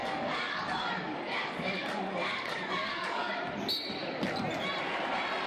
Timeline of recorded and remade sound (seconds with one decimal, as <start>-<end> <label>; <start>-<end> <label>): 0.0-3.3 remade; 3.3-5.5 recorded

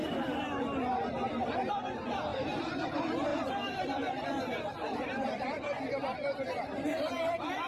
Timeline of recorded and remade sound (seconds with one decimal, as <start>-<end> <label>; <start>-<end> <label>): 0.0-2.3 recorded; 2.3-2.9 remade; 2.9-3.3 recorded; 3.3-7.3 remade; 7.3-7.7 recorded